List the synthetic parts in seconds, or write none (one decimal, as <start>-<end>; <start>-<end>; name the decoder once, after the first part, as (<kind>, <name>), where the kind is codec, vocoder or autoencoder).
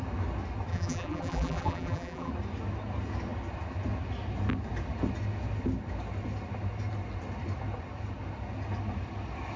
0.7-2.3 (vocoder, BigVGAN v2)